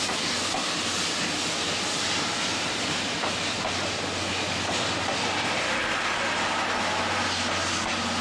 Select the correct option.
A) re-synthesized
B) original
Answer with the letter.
B